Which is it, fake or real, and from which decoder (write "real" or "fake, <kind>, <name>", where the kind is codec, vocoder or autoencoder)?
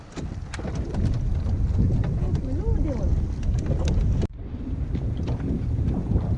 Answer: real